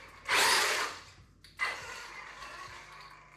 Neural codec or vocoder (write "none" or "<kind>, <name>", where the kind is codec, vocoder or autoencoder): none